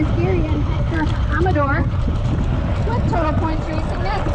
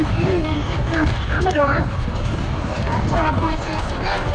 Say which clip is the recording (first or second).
first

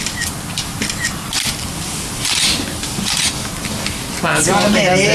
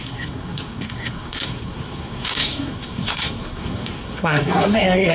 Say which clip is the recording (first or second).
first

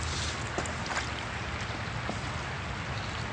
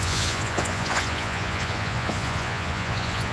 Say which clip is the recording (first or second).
first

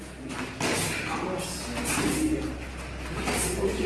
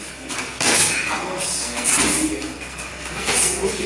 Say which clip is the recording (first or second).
first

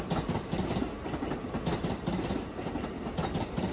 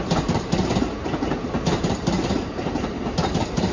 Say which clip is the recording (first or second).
first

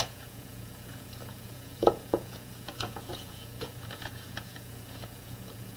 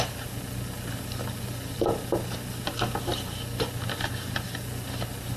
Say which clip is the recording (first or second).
second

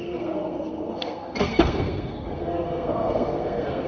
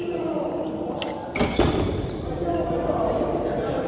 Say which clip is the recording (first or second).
second